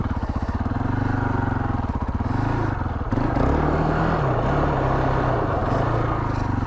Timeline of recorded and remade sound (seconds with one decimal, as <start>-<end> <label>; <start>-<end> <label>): 0.0-6.7 recorded

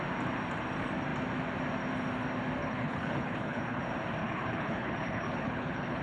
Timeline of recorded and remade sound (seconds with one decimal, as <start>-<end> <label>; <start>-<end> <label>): 0.0-2.6 recorded; 2.6-3.8 remade; 3.8-4.2 recorded; 4.2-6.0 remade

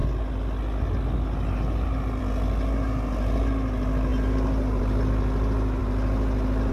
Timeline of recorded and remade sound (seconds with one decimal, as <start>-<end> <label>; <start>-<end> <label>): 0.0-6.7 recorded

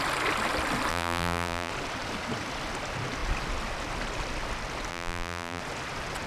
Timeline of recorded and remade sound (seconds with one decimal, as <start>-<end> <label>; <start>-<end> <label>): 0.0-0.9 recorded; 0.9-1.7 remade; 1.7-4.9 recorded; 4.9-5.6 remade; 5.6-6.3 recorded

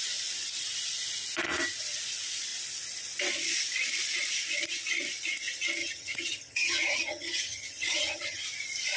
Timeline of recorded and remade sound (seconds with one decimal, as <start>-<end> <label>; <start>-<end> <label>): 0.0-5.8 recorded; 5.8-8.4 remade; 8.4-9.0 recorded

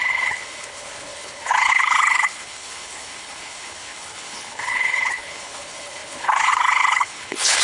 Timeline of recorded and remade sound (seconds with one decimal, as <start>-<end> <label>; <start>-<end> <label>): 0.0-7.6 remade